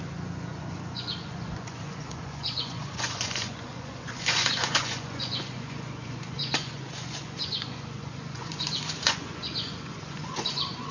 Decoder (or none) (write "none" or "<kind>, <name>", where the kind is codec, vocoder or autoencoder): vocoder, Vocos